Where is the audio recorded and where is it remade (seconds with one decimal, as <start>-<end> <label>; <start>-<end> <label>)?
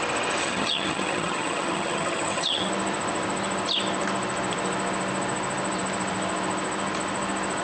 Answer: 0.0-0.4 recorded; 0.4-2.7 remade; 2.7-7.6 recorded